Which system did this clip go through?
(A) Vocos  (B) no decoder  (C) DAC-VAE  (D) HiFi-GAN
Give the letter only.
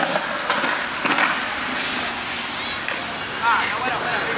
B